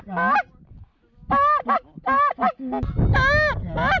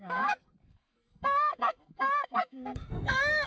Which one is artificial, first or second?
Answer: second